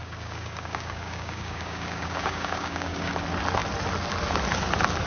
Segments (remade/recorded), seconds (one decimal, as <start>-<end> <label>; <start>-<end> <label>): 0.0-3.1 remade; 3.1-5.1 recorded